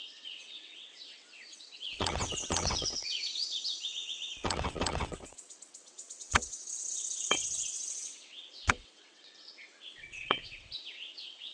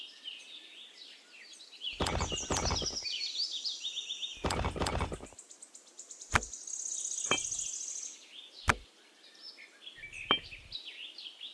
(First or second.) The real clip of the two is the second